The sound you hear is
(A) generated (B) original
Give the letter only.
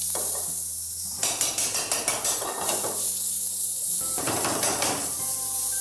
A